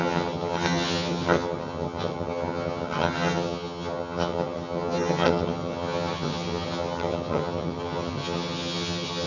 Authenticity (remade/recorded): remade